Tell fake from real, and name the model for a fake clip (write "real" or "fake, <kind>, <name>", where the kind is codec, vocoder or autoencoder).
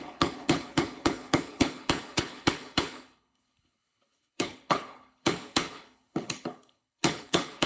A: fake, codec, HILCodec